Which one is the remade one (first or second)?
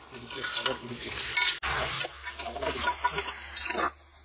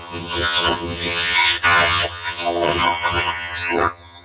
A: second